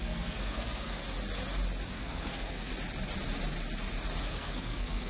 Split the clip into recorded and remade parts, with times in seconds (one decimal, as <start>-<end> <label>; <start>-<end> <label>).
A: 0.0-1.0 remade; 1.0-1.9 recorded; 1.9-2.7 remade; 2.7-4.2 recorded; 4.2-5.1 remade